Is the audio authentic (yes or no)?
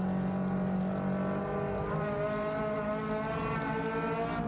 yes